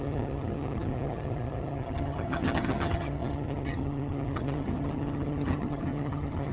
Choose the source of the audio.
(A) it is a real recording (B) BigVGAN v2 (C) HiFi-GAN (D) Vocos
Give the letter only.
C